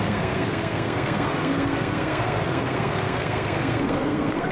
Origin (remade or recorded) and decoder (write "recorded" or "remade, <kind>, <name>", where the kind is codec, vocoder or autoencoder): remade, codec, SNAC